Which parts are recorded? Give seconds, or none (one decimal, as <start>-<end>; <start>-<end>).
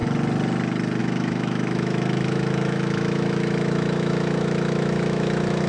0.0-1.0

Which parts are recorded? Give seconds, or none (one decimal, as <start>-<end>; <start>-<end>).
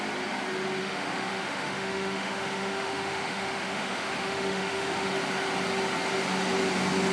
0.0-0.8; 5.1-7.1